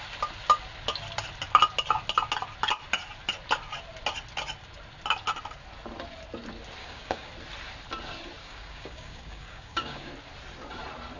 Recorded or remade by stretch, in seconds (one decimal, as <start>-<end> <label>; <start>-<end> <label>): 0.0-6.8 recorded; 6.8-7.3 remade; 7.3-8.4 recorded; 8.4-10.1 remade; 10.1-11.2 recorded